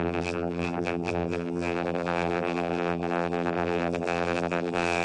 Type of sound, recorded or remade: remade